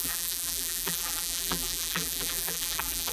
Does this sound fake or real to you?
fake